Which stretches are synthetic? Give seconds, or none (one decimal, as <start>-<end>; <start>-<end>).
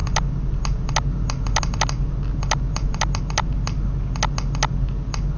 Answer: none